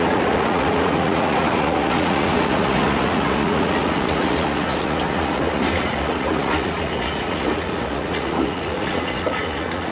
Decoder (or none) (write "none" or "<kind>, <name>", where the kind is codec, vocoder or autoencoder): vocoder, Vocos